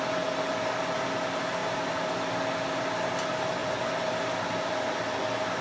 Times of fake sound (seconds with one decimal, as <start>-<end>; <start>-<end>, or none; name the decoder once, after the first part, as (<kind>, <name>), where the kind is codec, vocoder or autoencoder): 1.6-2.1 (vocoder, BigVGAN v2)